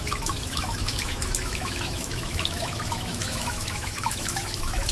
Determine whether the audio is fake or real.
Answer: fake